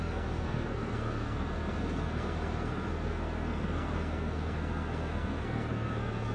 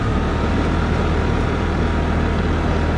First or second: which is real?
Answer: second